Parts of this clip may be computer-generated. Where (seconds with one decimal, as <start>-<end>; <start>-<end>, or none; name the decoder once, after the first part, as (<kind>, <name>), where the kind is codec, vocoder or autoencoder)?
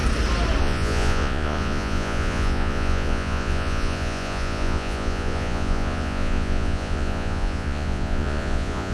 0.6-8.9 (vocoder, Vocos)